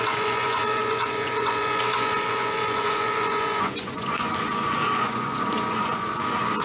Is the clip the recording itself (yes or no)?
no